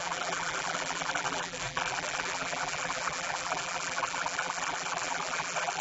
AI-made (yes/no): yes